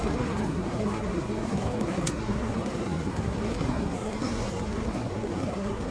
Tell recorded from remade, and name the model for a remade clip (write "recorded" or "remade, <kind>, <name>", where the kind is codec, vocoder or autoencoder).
remade, codec, SNAC